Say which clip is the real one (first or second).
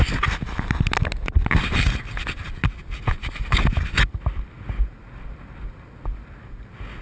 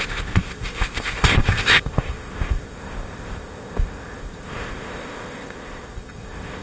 first